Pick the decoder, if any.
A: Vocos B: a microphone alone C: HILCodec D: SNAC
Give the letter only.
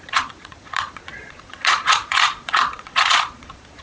A